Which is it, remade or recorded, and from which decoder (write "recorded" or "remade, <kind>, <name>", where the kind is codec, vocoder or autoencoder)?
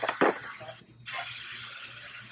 recorded